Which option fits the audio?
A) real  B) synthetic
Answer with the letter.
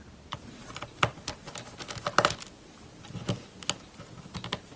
A